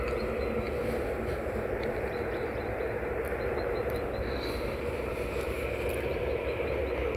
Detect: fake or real fake